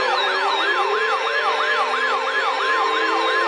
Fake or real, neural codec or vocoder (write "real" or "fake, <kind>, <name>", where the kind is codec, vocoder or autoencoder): real